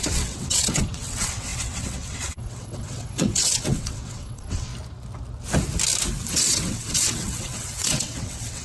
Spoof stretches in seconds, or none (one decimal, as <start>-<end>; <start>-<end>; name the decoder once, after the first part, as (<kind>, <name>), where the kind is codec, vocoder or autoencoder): 0.0-4.7 (vocoder, WaveNeXt); 6.3-8.6